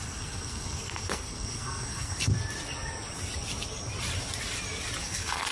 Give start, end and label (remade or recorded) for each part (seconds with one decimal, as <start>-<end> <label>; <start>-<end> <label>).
0.0-2.3 remade; 2.3-5.0 recorded; 5.0-5.5 remade